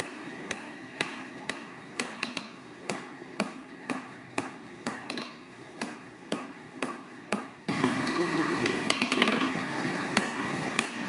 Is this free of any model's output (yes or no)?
no